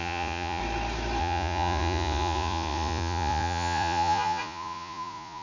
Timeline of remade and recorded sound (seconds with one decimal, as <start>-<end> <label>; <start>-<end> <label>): 0.0-0.6 remade; 0.6-1.2 recorded; 1.2-5.4 remade